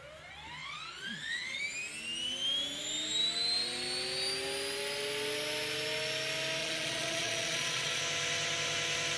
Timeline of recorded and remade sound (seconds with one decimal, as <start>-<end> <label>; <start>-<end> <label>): 0.0-0.6 recorded; 0.6-1.6 remade; 1.6-6.6 recorded; 6.6-8.0 remade; 8.0-9.2 recorded